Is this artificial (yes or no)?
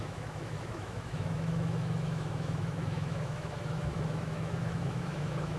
yes